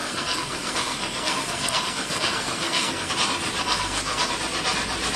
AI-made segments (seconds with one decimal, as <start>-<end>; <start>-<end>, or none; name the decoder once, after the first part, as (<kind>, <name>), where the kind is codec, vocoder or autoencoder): 0.0-3.1 (codec, SNAC); 3.6-4.3